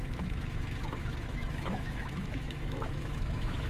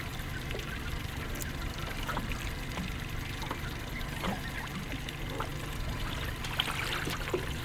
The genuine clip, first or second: second